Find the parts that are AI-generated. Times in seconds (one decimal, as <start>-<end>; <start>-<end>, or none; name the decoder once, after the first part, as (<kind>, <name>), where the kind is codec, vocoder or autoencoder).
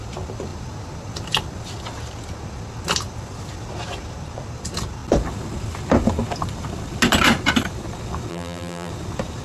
8.3-8.9 (vocoder, BigVGAN v2)